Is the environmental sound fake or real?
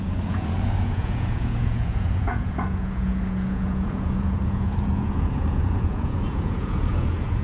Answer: fake